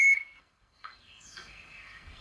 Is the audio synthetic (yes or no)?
yes